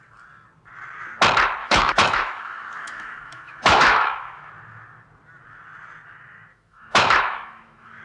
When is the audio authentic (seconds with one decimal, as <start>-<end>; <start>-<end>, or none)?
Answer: 0.0-1.6; 4.5-6.5

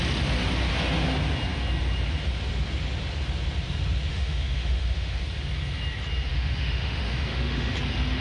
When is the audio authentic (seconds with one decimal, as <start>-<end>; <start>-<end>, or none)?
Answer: 0.0-4.1; 5.2-6.3; 7.7-8.2

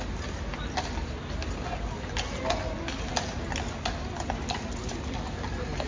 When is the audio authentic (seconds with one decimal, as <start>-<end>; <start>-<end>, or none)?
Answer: 0.0-5.9